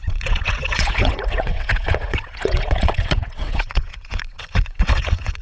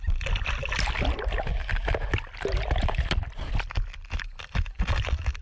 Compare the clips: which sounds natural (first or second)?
second